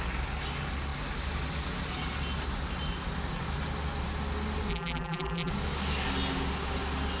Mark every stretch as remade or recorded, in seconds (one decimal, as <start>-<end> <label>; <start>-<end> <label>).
0.0-4.7 recorded; 4.7-5.5 remade; 5.5-7.2 recorded